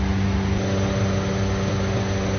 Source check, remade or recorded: recorded